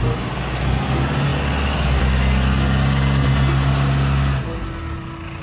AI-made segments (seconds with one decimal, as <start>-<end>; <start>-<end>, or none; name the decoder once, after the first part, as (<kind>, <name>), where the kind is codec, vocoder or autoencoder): none